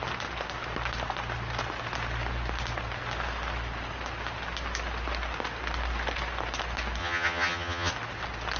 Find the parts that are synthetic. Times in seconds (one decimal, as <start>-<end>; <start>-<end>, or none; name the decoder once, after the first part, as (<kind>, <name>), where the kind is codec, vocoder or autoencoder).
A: 7.0-7.9 (vocoder, HiFi-GAN)